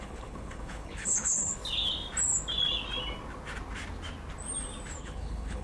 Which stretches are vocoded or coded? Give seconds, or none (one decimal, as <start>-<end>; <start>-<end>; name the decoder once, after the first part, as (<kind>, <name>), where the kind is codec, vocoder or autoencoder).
0.0-1.6 (codec, HILCodec); 5.0-5.6